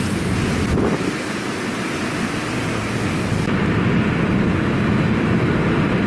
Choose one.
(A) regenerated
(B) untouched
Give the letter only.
B